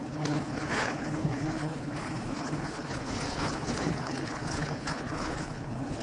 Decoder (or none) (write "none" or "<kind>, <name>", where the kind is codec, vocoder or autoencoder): codec, HILCodec